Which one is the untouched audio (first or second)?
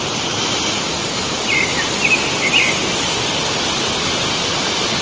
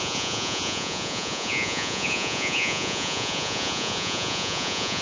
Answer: first